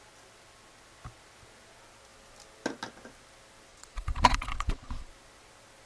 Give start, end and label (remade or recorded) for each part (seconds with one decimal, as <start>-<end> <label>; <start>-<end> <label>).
0.0-3.7 recorded; 3.7-5.1 remade; 5.1-5.9 recorded